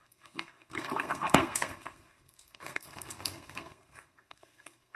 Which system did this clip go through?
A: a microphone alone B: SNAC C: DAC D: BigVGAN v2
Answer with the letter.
B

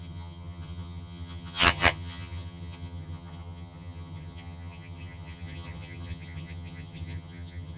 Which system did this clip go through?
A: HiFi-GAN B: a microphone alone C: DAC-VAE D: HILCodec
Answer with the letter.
A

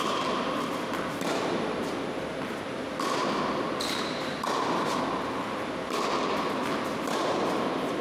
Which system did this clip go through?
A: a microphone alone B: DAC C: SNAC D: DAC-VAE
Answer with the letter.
A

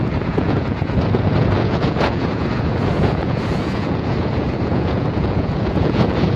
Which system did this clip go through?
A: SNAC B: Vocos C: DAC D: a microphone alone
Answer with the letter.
B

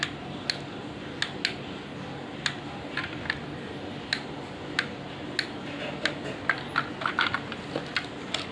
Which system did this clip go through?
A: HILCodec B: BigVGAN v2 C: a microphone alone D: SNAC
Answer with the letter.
C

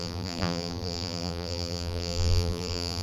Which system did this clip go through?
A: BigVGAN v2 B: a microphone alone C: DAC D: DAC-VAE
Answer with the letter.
A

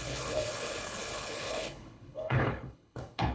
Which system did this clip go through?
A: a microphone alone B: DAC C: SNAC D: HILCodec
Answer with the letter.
D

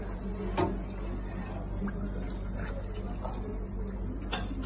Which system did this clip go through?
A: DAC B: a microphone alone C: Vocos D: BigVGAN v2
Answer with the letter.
B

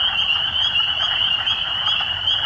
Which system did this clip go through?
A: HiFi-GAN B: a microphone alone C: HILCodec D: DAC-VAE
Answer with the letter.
B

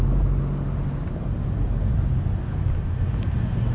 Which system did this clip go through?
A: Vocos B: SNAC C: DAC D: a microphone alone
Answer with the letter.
D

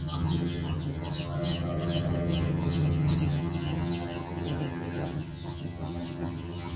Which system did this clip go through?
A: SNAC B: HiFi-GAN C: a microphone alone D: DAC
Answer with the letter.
B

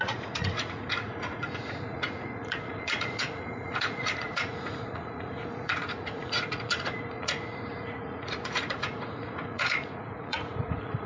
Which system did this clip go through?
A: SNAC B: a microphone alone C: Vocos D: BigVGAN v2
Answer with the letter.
C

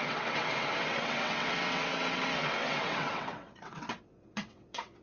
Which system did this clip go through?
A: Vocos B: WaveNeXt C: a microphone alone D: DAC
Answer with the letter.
B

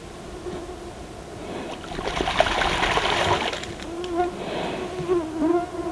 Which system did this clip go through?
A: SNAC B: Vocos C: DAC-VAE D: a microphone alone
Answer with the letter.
D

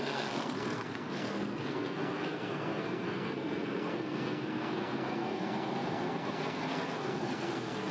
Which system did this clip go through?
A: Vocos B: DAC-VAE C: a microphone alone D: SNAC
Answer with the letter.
D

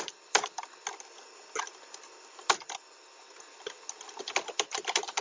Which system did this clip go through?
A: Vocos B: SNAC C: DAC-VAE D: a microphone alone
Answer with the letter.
D